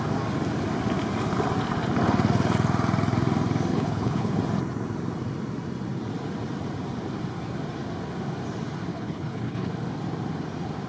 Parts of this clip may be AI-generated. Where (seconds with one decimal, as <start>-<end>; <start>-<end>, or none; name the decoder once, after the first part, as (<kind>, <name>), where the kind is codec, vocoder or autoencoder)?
3.7-4.4 (codec, HILCodec); 8.9-9.7